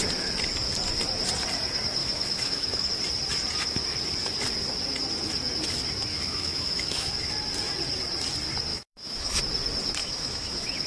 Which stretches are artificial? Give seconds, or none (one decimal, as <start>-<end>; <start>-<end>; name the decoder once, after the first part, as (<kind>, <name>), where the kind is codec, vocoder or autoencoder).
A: 2.0-2.9 (autoencoder, DAC-VAE); 6.1-7.1; 8.7-9.4; 10.0-10.9